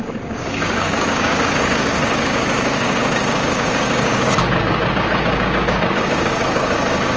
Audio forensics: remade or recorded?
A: remade